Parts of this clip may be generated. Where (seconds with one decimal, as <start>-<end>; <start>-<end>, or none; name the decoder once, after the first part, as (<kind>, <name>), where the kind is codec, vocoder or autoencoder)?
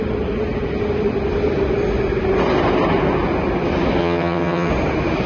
4.0-4.7 (vocoder, HiFi-GAN)